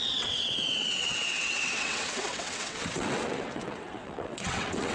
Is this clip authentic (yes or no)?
no